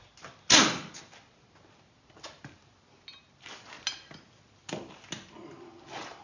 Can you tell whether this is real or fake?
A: real